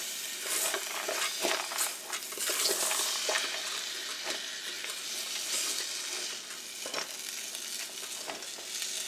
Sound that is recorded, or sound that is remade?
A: recorded